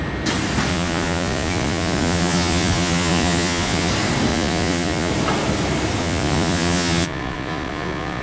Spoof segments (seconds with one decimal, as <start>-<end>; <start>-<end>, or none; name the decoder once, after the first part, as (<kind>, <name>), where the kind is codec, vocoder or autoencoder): 0.7-3.9 (vocoder, Vocos); 4.3-5.1; 6.0-8.2